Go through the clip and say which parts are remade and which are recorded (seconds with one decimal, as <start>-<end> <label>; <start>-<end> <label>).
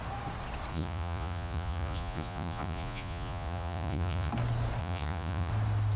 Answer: 0.0-0.7 recorded; 0.7-4.3 remade; 4.3-4.8 recorded; 4.8-5.5 remade; 5.5-6.0 recorded